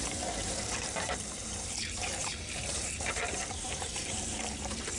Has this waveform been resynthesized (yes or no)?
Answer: yes